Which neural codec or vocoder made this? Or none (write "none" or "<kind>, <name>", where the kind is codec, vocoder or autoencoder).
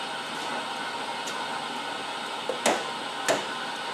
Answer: none